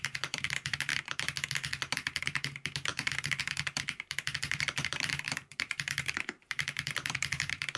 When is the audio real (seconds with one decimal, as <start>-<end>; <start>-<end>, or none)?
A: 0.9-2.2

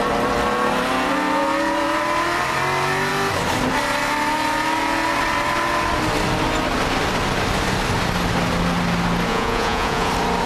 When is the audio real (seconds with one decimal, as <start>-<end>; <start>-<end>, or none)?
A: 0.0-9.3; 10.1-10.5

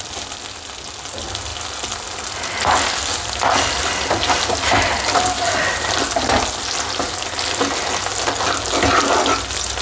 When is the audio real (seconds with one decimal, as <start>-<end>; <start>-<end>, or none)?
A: 0.0-9.8

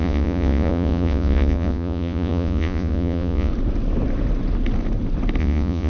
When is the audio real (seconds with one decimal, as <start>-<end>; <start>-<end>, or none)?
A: 3.5-5.4

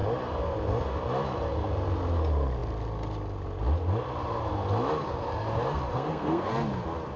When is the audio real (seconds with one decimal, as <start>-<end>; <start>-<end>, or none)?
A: 0.0-5.9; 6.5-7.2

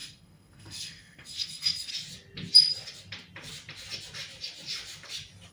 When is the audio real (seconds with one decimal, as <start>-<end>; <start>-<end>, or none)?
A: 1.9-5.5